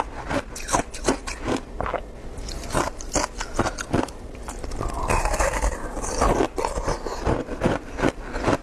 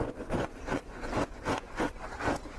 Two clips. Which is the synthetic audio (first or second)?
second